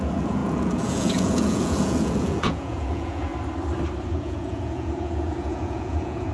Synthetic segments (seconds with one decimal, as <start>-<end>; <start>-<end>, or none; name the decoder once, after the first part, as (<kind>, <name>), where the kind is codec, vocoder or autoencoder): 0.0-3.3 (vocoder, Vocos); 4.1-6.3